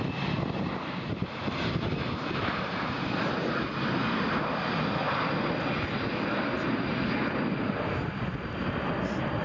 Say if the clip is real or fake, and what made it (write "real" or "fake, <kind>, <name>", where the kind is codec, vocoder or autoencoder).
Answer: real